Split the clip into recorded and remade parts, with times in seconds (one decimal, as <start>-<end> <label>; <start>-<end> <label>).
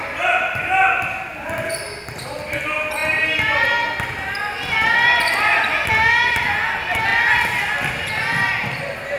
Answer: 0.0-9.2 recorded